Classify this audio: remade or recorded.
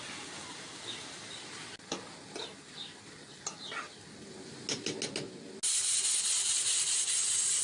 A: recorded